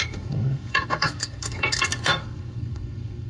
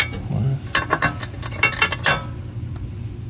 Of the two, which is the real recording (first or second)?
second